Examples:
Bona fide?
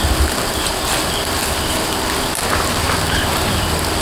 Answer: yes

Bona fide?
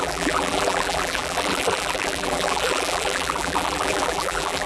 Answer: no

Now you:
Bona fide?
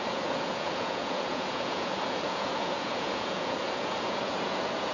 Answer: no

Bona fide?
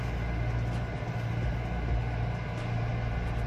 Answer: yes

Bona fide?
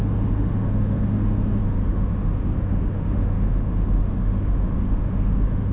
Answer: no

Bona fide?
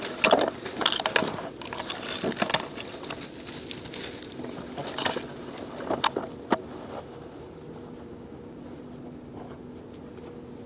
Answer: yes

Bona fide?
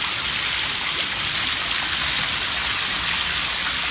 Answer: yes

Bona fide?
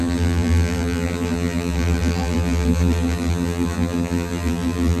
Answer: no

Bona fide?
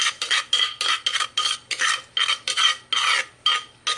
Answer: yes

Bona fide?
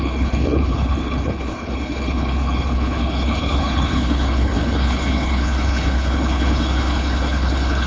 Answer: no